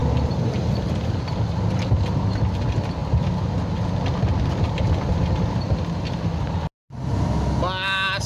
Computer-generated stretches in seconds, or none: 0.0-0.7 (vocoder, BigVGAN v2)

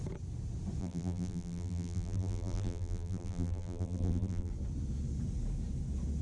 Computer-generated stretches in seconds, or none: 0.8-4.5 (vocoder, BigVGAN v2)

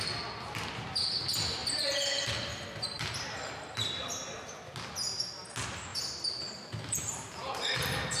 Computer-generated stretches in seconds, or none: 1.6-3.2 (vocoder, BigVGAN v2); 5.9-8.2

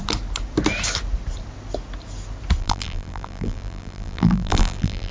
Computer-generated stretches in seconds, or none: 2.6-5.1 (vocoder, BigVGAN v2)

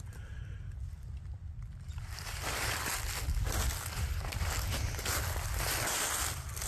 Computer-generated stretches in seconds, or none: 0.0-2.9 (vocoder, BigVGAN v2)

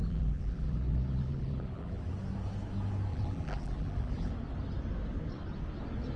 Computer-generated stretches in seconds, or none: 0.0-2.1 (vocoder, BigVGAN v2); 3.1-4.3